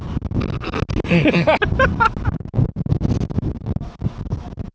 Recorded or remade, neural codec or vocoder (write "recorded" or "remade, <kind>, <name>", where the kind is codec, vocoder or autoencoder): recorded